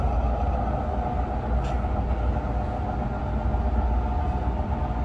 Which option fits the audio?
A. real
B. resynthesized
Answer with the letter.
A